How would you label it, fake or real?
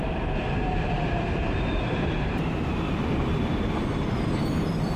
fake